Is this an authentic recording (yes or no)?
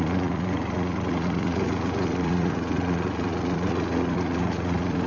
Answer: no